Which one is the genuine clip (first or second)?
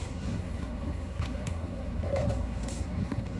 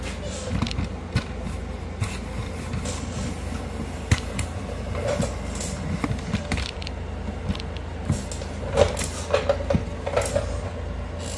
second